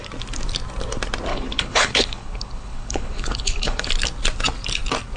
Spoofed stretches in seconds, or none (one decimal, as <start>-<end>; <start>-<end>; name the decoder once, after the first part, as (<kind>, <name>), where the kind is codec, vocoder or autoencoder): 1.3-3.9 (codec, HILCodec)

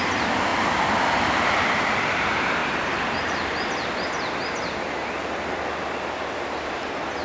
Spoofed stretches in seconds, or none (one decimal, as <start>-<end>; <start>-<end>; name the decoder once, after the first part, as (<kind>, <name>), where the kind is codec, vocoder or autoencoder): 0.0-0.5 (vocoder, BigVGAN v2); 1.0-2.6; 6.7-7.2

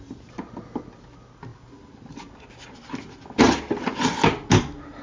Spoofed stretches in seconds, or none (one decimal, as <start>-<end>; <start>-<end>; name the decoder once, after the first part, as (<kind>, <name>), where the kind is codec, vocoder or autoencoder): none

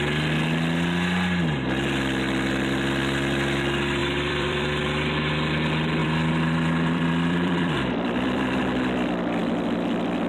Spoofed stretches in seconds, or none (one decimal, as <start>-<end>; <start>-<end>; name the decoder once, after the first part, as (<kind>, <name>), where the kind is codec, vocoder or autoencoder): 4.0-5.3 (vocoder, BigVGAN v2); 6.0-8.6